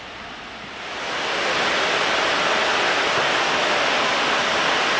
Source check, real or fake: real